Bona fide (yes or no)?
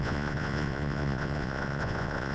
no